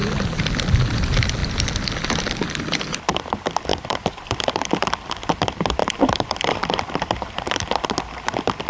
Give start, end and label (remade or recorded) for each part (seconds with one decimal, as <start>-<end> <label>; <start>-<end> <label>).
0.0-1.4 recorded; 1.4-3.2 remade; 3.2-3.7 recorded; 3.7-4.7 remade; 4.7-5.8 recorded; 5.8-7.5 remade; 7.5-8.7 recorded